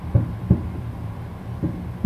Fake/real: real